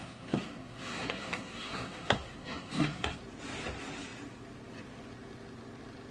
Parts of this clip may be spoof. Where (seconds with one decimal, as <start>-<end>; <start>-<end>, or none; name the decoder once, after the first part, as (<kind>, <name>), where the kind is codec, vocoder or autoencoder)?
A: 0.0-3.2 (codec, SNAC)

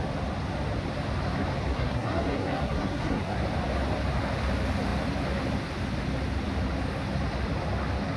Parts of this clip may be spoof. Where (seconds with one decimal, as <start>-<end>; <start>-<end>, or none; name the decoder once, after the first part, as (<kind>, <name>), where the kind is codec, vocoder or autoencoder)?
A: 1.7-3.4 (codec, SNAC)

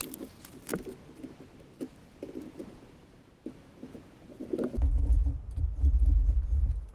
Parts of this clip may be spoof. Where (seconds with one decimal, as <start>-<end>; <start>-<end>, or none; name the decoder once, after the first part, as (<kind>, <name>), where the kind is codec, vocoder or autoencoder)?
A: none

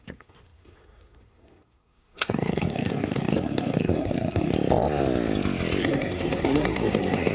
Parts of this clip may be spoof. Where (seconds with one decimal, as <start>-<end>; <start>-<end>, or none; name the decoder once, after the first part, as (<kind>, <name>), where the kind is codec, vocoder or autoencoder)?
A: 0.0-4.5 (codec, SNAC); 5.8-7.3

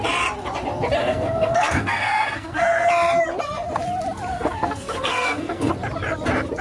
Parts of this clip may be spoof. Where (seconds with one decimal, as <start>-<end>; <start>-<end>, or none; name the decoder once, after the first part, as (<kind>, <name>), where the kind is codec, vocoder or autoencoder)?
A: 1.0-2.9 (codec, SNAC); 4.3-5.7

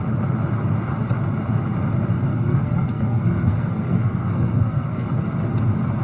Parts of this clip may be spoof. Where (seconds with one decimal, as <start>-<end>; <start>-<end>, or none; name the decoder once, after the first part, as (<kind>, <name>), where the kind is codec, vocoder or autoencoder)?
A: 2.3-5.1 (codec, SNAC)

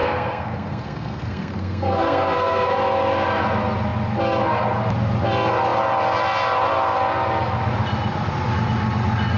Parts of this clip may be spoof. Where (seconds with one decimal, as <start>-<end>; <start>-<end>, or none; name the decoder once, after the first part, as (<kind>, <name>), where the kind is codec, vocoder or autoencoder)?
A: 0.0-2.8 (codec, SNAC)

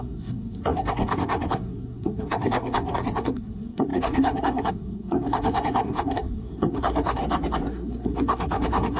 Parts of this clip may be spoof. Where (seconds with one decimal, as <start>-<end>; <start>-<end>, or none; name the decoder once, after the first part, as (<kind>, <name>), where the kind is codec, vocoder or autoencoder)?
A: 0.0-7.2 (codec, SNAC); 7.7-9.0